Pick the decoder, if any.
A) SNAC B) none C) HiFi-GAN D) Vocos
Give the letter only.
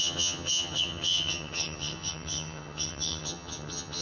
C